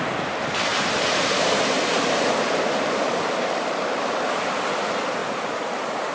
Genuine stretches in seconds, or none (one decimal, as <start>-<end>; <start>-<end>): 0.0-0.7; 4.4-5.2